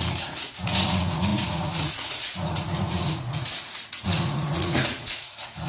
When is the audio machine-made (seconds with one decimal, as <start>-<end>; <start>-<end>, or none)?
0.0-5.7